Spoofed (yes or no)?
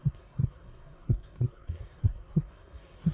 yes